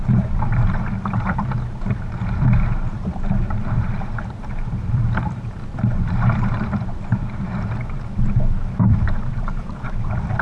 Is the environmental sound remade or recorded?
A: remade